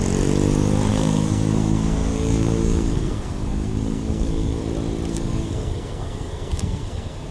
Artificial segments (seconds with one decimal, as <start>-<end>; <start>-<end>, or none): 0.9-4.6; 5.1-7.3